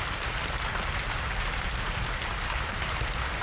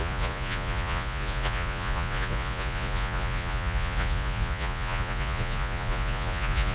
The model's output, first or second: second